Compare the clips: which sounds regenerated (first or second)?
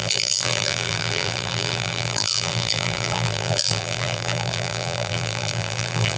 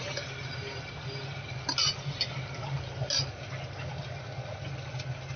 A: first